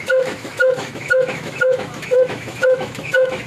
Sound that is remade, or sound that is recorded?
remade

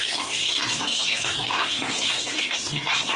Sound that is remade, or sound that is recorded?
remade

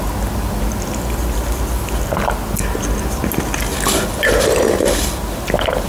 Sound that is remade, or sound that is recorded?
recorded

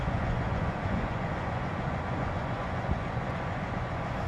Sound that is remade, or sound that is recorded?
remade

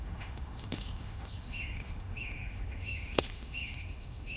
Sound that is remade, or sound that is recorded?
remade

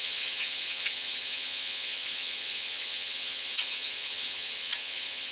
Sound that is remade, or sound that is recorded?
remade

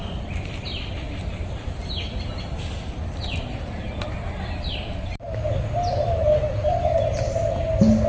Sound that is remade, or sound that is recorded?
recorded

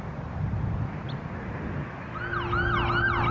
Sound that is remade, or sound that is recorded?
recorded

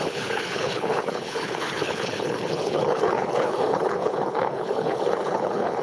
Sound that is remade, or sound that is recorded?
remade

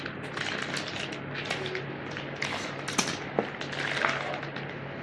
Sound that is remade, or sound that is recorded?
recorded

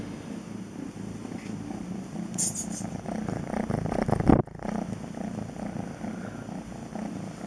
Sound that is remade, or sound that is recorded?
recorded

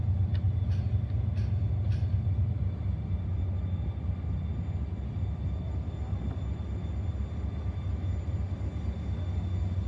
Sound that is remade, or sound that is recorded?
recorded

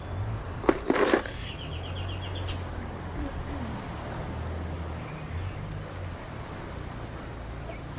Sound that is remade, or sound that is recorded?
recorded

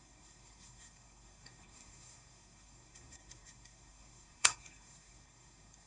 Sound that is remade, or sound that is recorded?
remade